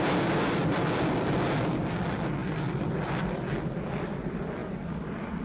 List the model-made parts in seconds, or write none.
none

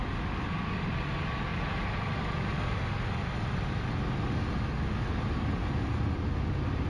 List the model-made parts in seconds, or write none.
none

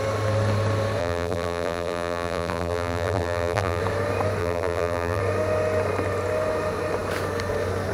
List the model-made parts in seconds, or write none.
1.0-3.8 (vocoder, BigVGAN v2); 4.4-5.2

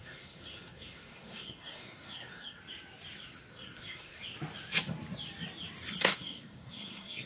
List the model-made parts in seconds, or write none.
0.0-2.6 (codec, SNAC); 3.5-4.2; 6.0-7.3

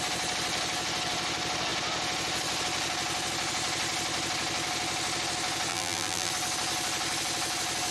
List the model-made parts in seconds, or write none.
5.7-6.3 (vocoder, BigVGAN v2)

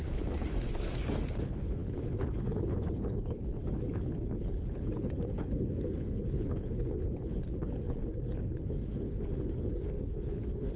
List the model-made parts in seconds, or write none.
0.0-10.8 (codec, HILCodec)

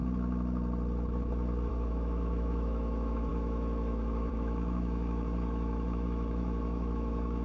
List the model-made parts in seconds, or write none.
1.7-7.4 (autoencoder, DAC-VAE)

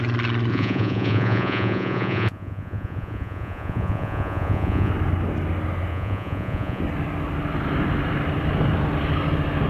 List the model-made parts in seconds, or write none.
0.5-4.9 (vocoder, Vocos); 5.9-6.8